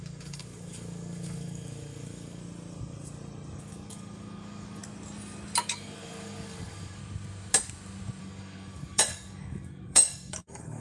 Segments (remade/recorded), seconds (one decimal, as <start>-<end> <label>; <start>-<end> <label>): 0.0-2.4 remade; 2.4-3.6 recorded; 3.6-4.8 remade; 4.8-5.6 recorded; 5.6-7.0 remade; 7.0-8.2 recorded; 8.2-10.8 remade